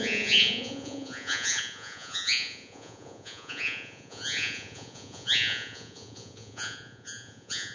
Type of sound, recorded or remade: remade